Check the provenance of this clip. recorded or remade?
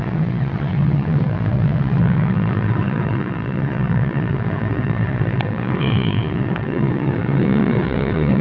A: remade